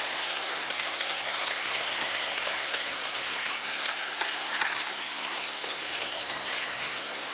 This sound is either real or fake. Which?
fake